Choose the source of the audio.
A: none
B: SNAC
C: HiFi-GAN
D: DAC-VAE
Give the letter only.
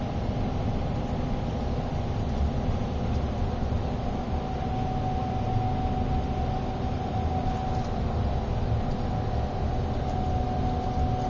A